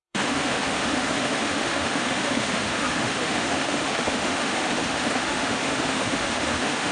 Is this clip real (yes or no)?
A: no